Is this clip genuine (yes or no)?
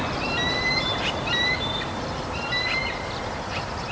yes